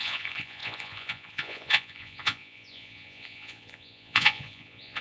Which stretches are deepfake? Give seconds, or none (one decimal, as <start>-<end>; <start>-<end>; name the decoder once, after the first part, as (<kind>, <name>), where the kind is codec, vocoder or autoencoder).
0.0-5.0 (vocoder, Vocos)